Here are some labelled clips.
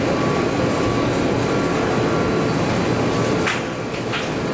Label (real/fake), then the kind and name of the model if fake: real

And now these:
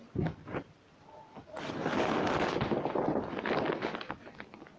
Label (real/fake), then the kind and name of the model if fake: real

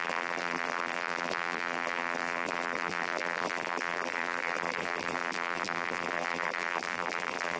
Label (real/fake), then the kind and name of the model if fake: fake, vocoder, BigVGAN v2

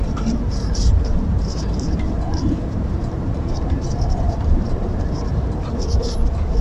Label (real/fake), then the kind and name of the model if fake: fake, vocoder, BigVGAN v2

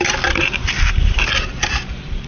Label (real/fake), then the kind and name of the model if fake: fake, vocoder, BigVGAN v2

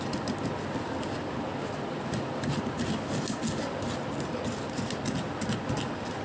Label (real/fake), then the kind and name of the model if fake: real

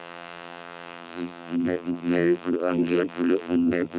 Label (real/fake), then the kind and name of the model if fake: fake, vocoder, BigVGAN v2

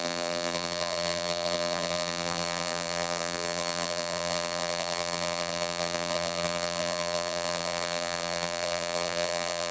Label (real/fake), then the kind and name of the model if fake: fake, vocoder, BigVGAN v2